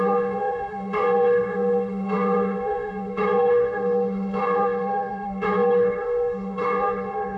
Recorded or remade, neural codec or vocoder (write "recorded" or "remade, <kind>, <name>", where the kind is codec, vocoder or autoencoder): remade, autoencoder, DAC-VAE